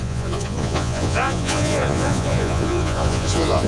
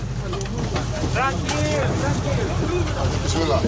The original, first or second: second